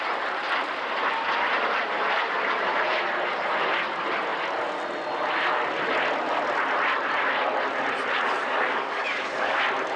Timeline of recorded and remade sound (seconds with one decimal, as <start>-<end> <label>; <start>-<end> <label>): 0.0-8.4 recorded; 8.4-9.6 remade; 9.6-10.0 recorded

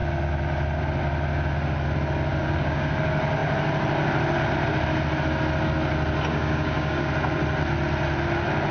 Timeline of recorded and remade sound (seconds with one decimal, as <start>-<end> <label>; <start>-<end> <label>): 0.0-2.4 recorded; 2.4-2.9 remade; 2.9-6.3 recorded; 6.3-7.1 remade; 7.1-8.7 recorded